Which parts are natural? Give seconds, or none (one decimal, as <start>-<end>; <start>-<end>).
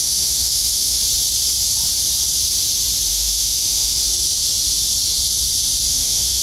1.0-3.1; 3.9-5.9